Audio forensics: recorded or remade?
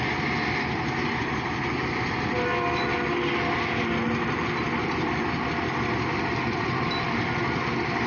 recorded